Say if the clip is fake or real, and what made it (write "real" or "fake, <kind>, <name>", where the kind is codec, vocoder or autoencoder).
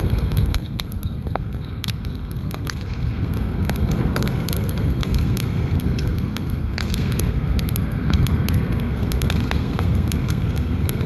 fake, codec, SNAC